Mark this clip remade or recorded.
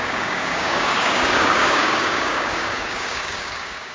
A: remade